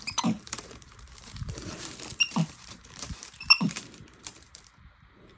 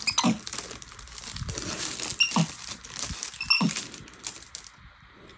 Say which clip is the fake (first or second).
first